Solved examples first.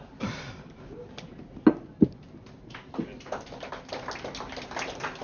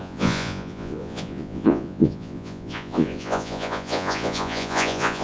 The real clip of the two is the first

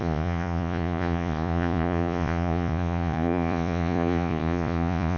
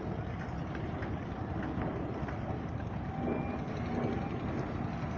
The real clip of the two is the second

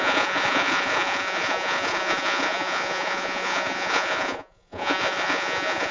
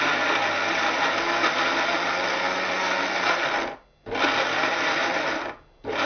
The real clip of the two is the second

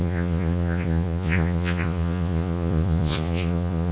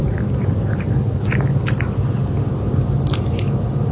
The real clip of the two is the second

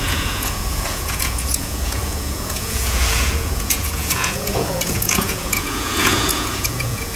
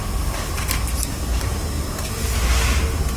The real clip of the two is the second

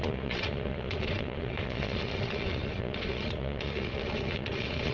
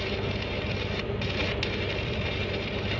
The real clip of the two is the second